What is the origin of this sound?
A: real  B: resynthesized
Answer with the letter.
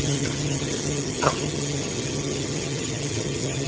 B